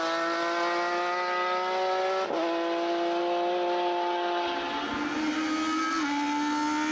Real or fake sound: real